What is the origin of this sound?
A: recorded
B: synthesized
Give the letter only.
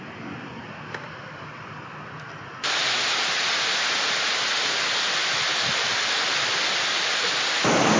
A